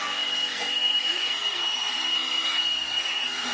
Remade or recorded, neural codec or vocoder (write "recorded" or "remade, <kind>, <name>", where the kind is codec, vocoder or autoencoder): remade, codec, SNAC